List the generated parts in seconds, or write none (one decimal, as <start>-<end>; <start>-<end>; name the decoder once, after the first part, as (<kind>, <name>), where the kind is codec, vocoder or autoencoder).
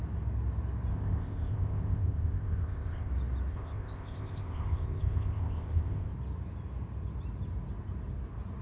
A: 0.9-3.1 (codec, ZipCodec); 3.5-6.1